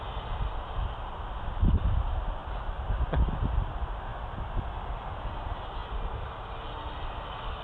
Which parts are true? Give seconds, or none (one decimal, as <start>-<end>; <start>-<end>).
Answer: 0.0-7.6